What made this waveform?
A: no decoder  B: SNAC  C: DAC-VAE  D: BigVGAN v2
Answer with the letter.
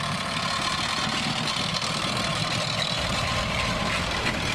A